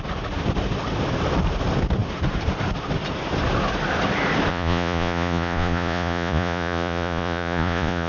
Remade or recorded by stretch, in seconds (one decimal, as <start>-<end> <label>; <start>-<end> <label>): 0.0-4.5 recorded; 4.5-8.1 remade